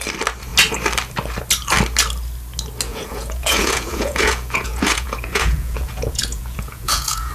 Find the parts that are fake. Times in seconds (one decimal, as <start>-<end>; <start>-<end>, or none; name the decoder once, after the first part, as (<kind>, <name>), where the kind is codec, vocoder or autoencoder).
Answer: 2.9-7.3 (vocoder, Vocos)